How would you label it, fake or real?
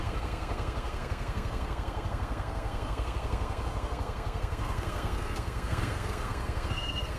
fake